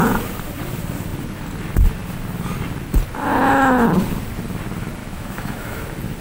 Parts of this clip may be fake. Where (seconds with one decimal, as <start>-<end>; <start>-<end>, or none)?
5.0-5.8

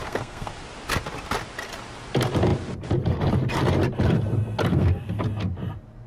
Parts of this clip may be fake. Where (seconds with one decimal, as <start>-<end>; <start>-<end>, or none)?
0.0-0.5; 4.7-5.2

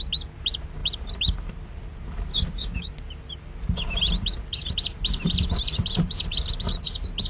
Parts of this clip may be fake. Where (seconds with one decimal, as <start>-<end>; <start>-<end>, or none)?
2.3-2.9

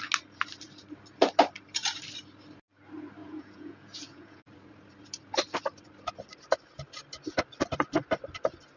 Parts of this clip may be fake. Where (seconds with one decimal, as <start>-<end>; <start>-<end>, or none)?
3.2-4.5

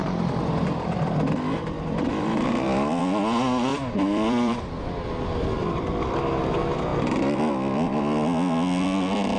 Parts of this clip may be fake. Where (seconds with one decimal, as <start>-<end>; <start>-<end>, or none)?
0.0-3.0; 3.7-4.7

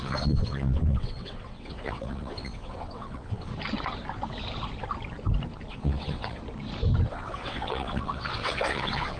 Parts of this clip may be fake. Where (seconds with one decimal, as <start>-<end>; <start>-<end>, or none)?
0.0-3.5; 5.7-6.4; 7.1-9.2